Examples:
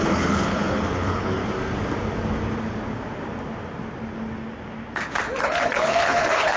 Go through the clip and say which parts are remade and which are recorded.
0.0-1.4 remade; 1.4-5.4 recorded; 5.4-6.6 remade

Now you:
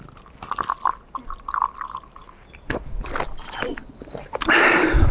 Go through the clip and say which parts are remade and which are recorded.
0.0-2.2 recorded; 2.2-2.9 remade; 2.9-5.1 recorded

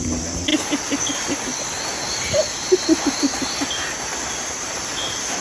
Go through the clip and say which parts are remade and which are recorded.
0.0-1.5 remade; 1.5-4.7 recorded; 4.7-5.4 remade

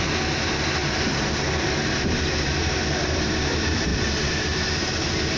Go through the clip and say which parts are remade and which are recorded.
0.0-0.8 recorded; 0.8-2.3 remade; 2.3-3.9 recorded; 3.9-4.7 remade; 4.7-5.4 recorded